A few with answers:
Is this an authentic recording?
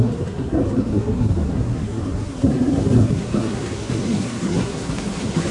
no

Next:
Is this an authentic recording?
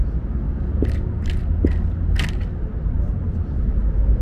yes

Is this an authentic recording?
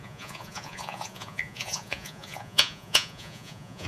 no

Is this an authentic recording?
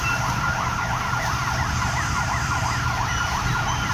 yes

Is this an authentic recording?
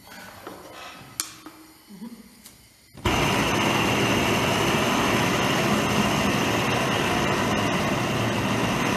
yes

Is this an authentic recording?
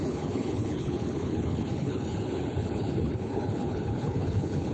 no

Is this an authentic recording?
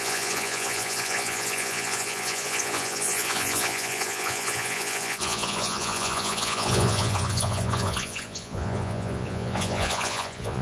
no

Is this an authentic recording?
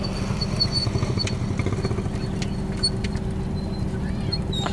yes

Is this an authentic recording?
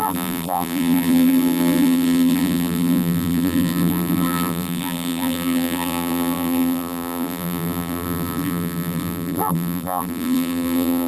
no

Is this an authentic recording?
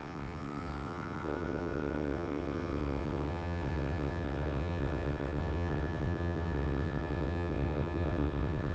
no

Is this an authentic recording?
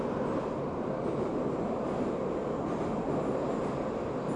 yes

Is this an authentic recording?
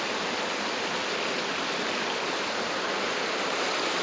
yes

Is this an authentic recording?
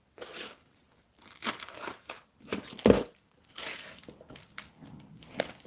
yes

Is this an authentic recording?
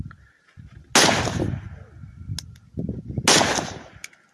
yes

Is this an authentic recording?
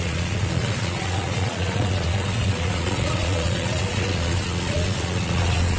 no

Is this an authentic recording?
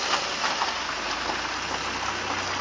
yes